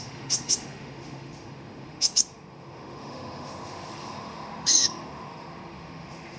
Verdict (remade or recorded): remade